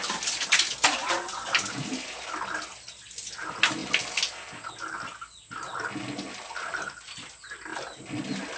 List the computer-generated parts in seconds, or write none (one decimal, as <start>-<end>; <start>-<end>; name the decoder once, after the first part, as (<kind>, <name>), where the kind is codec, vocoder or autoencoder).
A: none